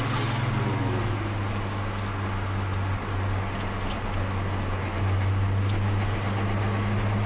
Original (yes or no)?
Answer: yes